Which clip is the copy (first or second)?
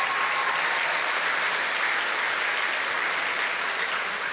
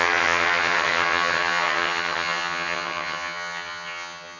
second